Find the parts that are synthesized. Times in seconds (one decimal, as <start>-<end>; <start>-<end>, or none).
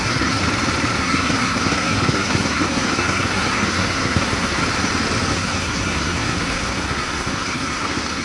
0.0-0.4; 1.0-4.6; 5.3-8.2